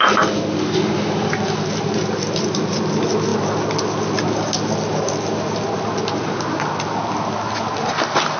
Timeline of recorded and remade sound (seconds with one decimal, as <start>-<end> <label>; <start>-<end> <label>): 0.0-8.4 recorded